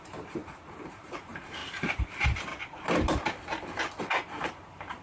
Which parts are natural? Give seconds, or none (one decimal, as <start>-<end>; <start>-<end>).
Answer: 0.4-0.9; 2.5-4.0

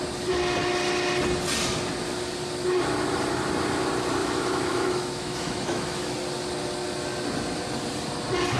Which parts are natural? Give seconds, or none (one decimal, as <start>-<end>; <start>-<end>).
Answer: 0.0-4.2; 6.1-8.6

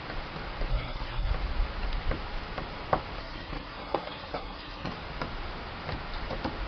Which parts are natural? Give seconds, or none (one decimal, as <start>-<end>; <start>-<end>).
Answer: 0.0-0.7; 1.3-3.2; 4.9-6.7

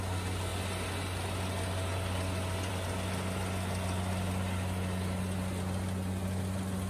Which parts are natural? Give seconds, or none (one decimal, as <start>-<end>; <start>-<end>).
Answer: 0.0-6.9

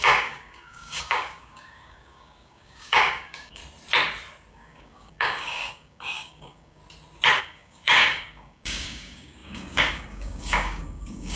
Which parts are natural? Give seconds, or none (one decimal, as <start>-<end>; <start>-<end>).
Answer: 3.6-4.5; 6.8-7.4

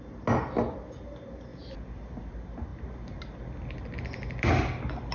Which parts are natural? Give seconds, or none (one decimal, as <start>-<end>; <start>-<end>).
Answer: 0.0-5.1